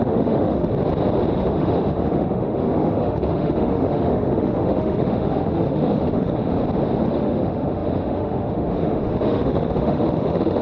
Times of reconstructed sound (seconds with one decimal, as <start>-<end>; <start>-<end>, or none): 0.0-0.7; 1.3-6.6; 7.1-10.6